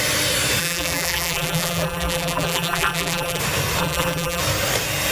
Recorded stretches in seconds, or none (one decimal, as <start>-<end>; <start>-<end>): 0.0-0.6; 3.4-3.8; 4.4-5.1